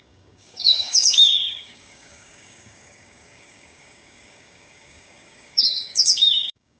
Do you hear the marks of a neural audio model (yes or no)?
yes